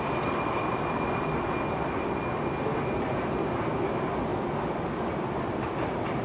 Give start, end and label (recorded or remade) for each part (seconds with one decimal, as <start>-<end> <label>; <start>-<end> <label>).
0.0-6.2 recorded

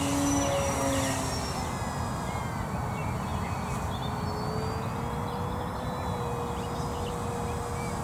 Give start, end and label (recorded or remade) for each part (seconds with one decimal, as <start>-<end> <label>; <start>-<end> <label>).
0.0-8.0 recorded

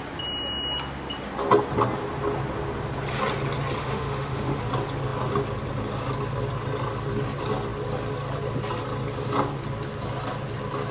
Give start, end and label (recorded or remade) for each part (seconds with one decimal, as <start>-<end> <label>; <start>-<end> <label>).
0.0-3.8 recorded; 3.8-4.6 remade; 4.6-10.9 recorded

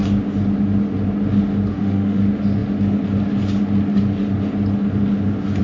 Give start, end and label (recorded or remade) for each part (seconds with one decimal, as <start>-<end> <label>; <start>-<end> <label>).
0.0-1.7 recorded; 1.7-2.2 remade; 2.2-5.6 recorded